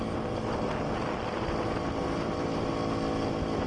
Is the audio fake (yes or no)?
no